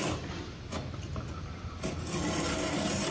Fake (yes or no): no